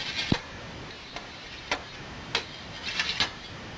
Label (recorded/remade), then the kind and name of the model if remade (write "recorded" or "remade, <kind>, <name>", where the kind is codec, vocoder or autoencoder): recorded